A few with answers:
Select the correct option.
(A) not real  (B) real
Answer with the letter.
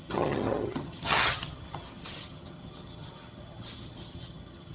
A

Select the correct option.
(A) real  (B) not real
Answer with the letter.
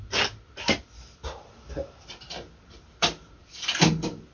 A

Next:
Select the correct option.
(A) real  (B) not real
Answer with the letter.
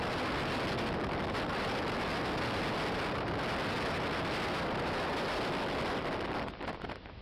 A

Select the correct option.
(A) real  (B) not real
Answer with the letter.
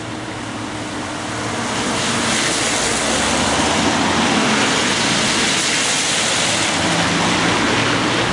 A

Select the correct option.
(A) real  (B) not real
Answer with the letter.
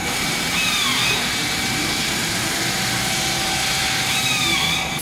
B